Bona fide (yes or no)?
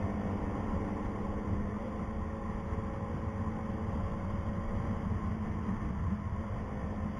yes